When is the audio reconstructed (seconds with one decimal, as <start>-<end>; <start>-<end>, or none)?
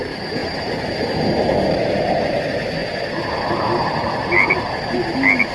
0.4-1.2